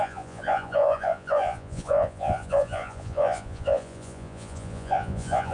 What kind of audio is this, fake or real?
fake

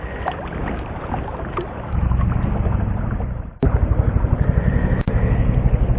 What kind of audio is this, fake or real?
real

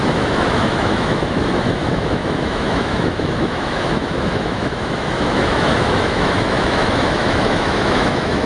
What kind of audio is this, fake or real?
fake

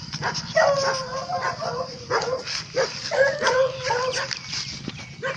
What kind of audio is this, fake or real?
real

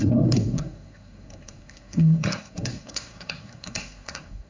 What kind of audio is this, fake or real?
fake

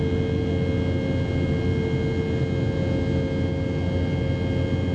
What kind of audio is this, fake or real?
real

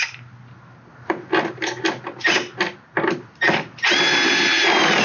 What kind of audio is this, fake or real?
real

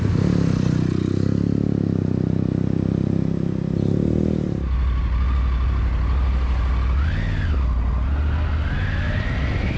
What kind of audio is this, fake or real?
real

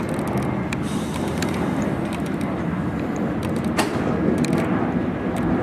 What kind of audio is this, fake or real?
real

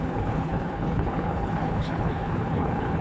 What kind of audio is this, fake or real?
fake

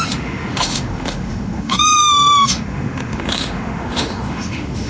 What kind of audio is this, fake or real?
fake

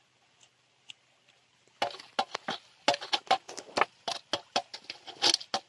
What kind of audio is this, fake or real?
real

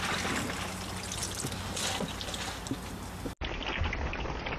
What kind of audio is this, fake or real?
real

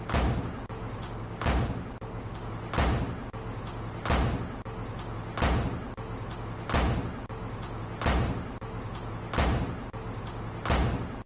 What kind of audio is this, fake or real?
real